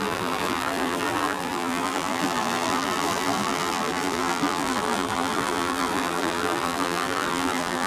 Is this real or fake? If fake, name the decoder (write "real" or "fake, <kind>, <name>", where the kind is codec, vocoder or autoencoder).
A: fake, vocoder, BigVGAN v2